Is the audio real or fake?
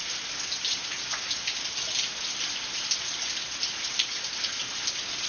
real